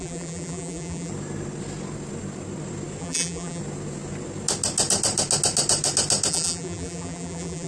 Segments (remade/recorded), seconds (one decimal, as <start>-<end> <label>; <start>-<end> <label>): 0.0-1.1 remade; 1.1-3.0 recorded; 3.0-3.6 remade; 3.6-6.3 recorded; 6.3-7.7 remade